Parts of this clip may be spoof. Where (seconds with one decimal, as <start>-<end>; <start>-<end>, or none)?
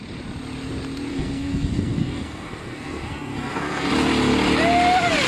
1.1-3.9